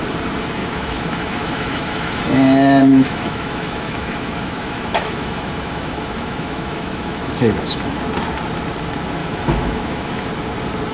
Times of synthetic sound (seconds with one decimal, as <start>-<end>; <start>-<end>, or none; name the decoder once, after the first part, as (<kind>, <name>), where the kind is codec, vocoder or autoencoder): 0.6-2.2 (autoencoder, DAC-VAE); 2.9-8.0; 9.2-10.3